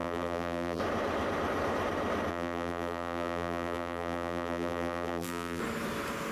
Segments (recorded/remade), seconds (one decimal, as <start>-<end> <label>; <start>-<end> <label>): 0.0-0.8 remade; 0.8-2.3 recorded; 2.3-5.6 remade; 5.6-6.3 recorded